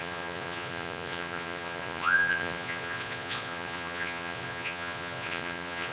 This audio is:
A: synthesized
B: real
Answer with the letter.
A